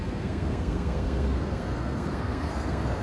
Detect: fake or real fake